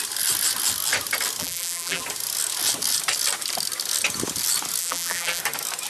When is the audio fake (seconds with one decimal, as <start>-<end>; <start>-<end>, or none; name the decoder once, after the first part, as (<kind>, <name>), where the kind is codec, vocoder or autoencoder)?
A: 1.4-2.0 (vocoder, BigVGAN v2); 4.8-5.4